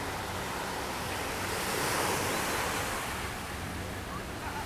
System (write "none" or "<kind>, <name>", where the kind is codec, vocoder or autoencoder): none